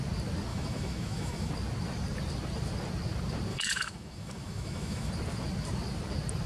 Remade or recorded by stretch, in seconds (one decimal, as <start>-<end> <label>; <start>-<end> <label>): 0.0-0.5 recorded; 0.5-1.5 remade; 1.5-3.5 recorded; 3.5-5.1 remade; 5.1-6.5 recorded